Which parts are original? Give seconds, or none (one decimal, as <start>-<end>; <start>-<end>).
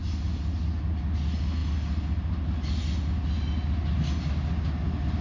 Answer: 0.0-5.2